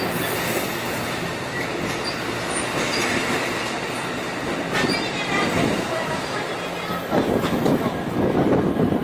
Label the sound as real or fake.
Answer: real